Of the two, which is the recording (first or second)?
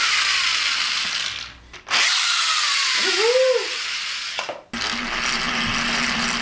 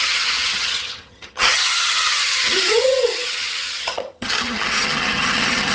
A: first